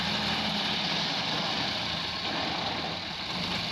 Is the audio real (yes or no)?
yes